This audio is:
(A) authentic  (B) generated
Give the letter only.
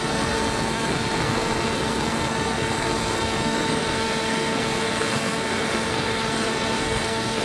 B